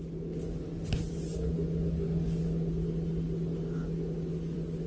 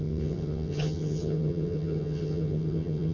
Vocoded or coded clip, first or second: second